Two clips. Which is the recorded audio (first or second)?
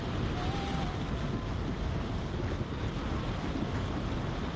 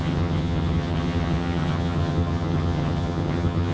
first